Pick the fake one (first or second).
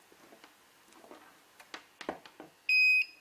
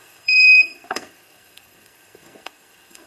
second